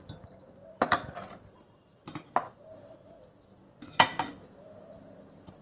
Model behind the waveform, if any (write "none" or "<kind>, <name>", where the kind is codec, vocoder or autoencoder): none